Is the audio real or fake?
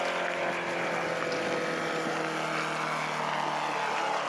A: real